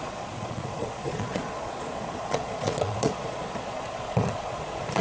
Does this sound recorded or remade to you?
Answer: remade